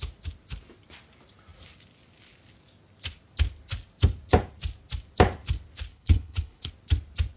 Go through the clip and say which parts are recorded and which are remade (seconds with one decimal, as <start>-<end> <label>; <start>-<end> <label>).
0.0-5.9 recorded; 5.9-6.7 remade; 6.7-7.4 recorded